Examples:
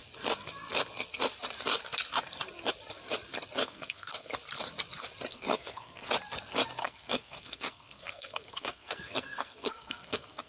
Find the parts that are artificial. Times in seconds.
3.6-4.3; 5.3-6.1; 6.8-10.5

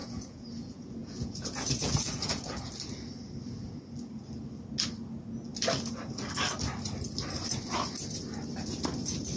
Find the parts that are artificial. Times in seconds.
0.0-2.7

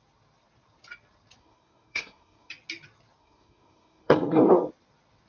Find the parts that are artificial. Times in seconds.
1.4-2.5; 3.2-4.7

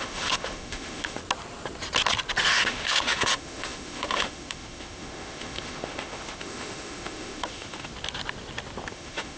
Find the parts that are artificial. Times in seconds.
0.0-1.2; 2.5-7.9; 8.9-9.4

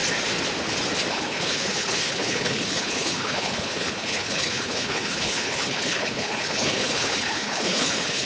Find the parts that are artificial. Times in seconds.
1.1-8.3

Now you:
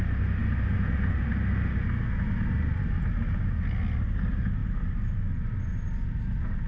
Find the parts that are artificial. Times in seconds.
none

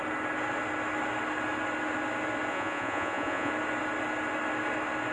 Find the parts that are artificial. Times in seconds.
2.5-3.5

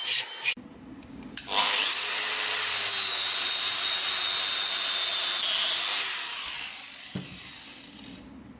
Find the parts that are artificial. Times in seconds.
none